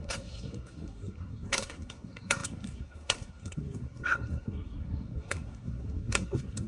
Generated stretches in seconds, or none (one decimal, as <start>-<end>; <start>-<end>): 0.0-6.7